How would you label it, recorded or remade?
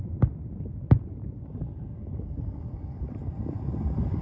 recorded